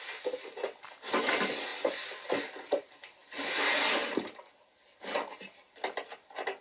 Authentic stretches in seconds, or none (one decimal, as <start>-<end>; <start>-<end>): 0.0-6.6